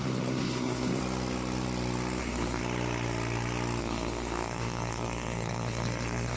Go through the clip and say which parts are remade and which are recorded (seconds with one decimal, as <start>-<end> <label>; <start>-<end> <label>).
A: 0.0-1.0 remade; 1.0-2.2 recorded; 2.2-2.6 remade; 2.6-3.8 recorded; 3.8-6.4 remade